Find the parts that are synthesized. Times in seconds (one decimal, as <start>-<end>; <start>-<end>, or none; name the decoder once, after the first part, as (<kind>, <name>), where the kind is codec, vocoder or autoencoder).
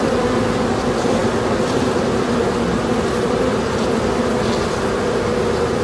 none